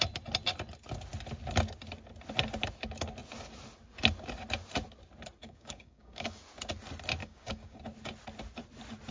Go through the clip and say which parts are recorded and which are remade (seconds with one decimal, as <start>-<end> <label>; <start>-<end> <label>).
0.0-5.4 recorded; 5.4-6.4 remade; 6.4-7.2 recorded; 7.2-7.8 remade; 7.8-9.1 recorded